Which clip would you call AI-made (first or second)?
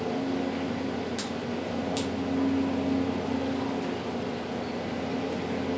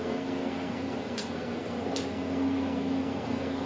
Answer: second